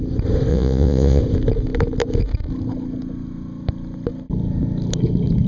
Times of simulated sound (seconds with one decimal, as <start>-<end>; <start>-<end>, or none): 0.5-1.2